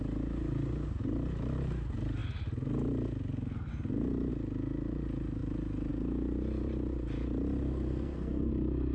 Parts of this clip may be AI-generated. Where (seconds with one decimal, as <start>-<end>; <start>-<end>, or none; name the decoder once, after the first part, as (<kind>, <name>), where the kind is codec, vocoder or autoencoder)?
7.6-8.5 (codec, SNAC)